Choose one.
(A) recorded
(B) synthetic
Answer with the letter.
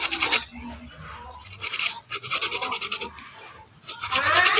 A